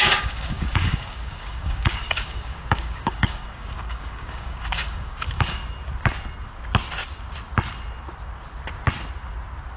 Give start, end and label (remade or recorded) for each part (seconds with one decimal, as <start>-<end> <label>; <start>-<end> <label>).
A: 0.0-5.6 remade; 5.6-9.8 recorded